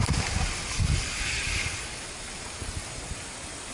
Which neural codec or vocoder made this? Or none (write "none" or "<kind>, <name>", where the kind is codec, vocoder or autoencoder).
none